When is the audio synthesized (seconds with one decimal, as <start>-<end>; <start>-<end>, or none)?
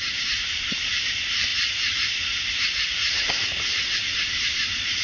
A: none